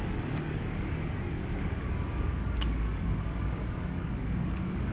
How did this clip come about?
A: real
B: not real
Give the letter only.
B